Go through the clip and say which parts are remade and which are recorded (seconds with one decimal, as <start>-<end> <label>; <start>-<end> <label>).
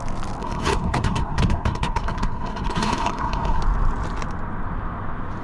0.0-0.4 recorded; 0.4-3.6 remade; 3.6-5.4 recorded